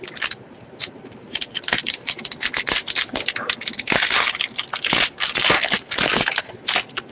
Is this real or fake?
real